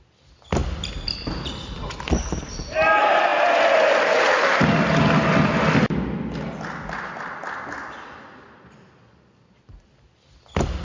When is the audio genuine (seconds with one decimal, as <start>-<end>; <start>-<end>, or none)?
0.0-10.8